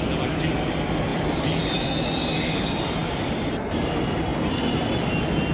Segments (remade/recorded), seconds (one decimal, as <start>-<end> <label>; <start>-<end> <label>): 0.0-1.1 recorded; 1.1-2.2 remade; 2.2-5.5 recorded